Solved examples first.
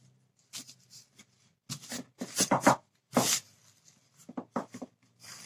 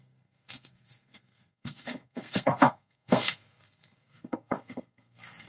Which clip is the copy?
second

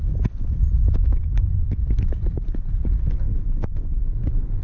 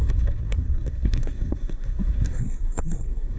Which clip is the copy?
second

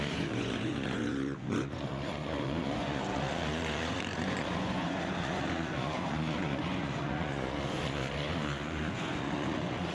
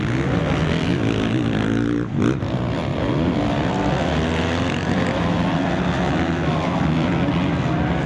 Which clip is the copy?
first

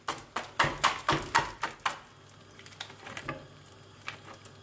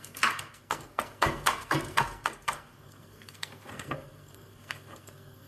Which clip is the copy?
second